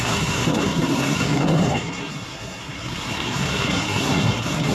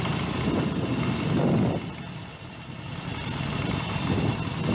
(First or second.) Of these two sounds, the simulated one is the first